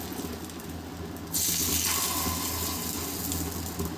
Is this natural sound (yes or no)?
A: yes